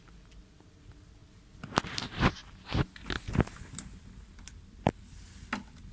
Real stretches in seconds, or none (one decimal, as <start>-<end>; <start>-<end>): 0.0-5.9